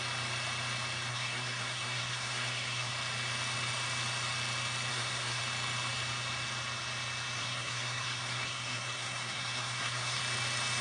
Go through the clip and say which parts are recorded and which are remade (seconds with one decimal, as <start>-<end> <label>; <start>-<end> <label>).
0.0-1.1 recorded; 1.1-2.9 remade; 2.9-4.9 recorded; 4.9-5.4 remade; 5.4-7.4 recorded; 7.4-10.2 remade; 10.2-10.8 recorded